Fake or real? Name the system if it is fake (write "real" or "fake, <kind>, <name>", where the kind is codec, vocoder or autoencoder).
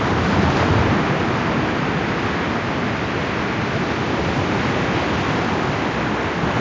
real